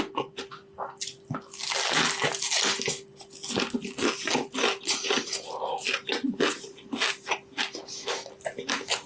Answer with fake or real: real